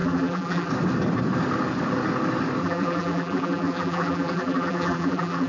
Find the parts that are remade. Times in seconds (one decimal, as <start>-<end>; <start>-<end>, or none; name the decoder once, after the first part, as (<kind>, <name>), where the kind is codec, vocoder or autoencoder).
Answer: 0.0-0.7 (vocoder, BigVGAN v2); 2.6-5.5